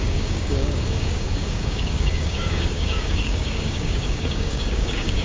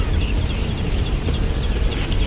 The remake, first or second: first